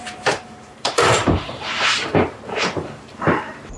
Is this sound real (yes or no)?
no